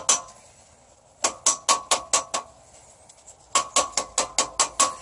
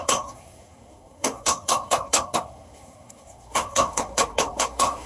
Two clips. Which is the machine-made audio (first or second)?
second